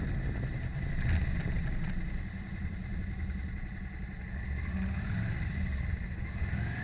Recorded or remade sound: recorded